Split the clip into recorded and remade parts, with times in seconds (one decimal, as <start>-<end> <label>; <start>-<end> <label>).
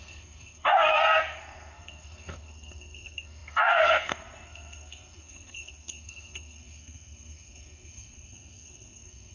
0.0-9.3 remade